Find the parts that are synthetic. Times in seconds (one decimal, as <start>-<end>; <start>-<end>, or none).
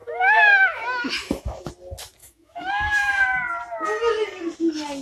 0.0-1.7; 2.2-3.2